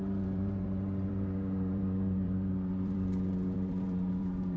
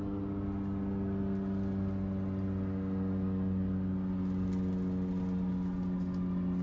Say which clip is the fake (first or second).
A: first